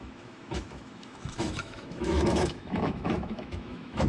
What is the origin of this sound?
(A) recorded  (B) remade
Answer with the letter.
B